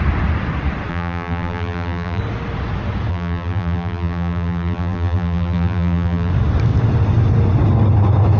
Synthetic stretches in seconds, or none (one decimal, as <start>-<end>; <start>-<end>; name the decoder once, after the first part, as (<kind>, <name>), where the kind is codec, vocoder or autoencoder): 0.9-2.2 (vocoder, BigVGAN v2); 3.1-6.3